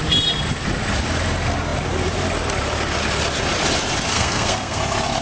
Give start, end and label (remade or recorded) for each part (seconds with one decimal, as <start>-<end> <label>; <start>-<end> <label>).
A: 0.0-4.1 recorded; 4.1-4.8 remade; 4.8-5.2 recorded